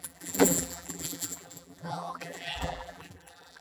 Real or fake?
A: fake